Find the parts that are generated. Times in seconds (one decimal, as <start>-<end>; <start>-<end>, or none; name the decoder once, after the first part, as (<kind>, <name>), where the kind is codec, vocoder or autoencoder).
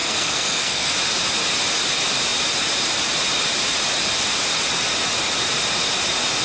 0.0-0.9 (codec, SNAC)